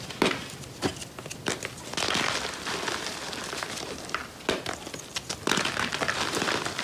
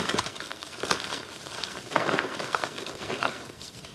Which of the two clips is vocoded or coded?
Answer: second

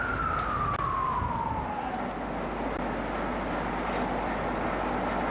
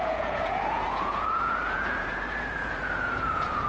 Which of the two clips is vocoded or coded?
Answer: second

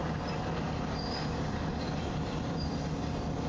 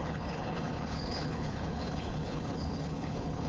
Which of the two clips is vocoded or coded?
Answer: second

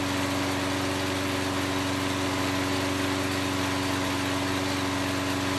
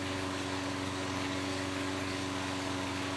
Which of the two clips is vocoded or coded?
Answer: second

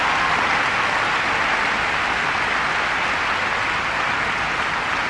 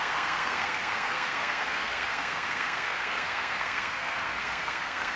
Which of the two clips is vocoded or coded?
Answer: second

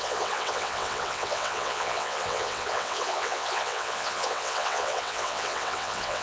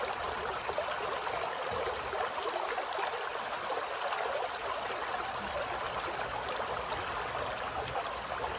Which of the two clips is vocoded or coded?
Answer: first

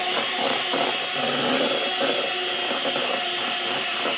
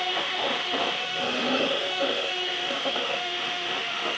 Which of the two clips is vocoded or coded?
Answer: second